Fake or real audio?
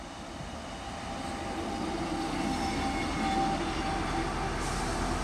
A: real